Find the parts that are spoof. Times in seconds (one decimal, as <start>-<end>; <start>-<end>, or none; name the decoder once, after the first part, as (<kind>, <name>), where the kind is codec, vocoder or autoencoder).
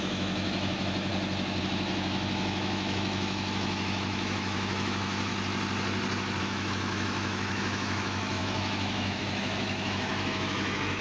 0.0-1.1 (autoencoder, DAC-VAE); 1.6-5.3; 6.4-11.0